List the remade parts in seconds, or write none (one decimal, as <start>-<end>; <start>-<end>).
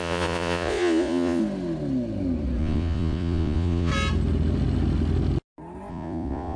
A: 0.0-1.4; 2.6-3.9; 5.9-6.6